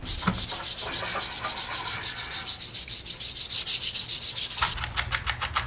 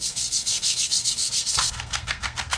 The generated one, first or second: second